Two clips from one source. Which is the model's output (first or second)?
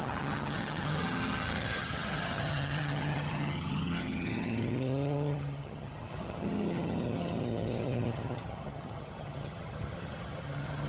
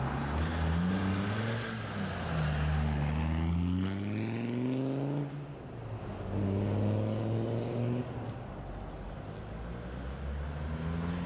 first